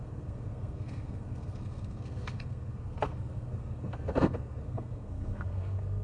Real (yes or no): no